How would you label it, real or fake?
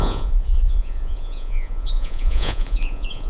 fake